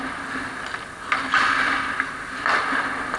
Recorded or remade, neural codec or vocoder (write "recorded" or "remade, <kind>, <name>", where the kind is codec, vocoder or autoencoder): recorded